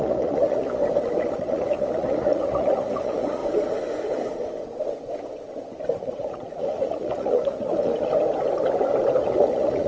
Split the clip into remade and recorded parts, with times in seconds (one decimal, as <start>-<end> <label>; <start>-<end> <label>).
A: 0.0-0.8 remade; 0.8-1.3 recorded; 1.3-3.4 remade; 3.4-6.0 recorded; 6.0-7.9 remade; 7.9-9.2 recorded; 9.2-9.9 remade